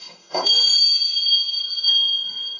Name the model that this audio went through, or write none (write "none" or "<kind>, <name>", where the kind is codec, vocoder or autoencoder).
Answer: codec, SNAC